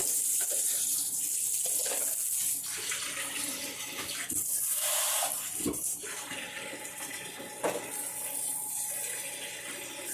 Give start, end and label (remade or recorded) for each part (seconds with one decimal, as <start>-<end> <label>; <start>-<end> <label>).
0.0-1.2 remade; 1.2-5.3 recorded; 5.3-7.3 remade; 7.3-10.1 recorded